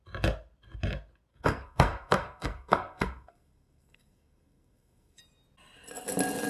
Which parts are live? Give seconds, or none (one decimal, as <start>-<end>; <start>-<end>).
0.0-1.3; 5.2-6.5